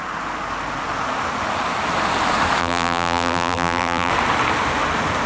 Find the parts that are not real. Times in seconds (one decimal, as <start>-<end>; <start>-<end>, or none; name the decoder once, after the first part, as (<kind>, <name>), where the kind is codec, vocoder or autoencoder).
2.6-4.1 (vocoder, BigVGAN v2)